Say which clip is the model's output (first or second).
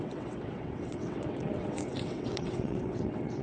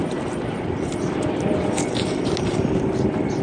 first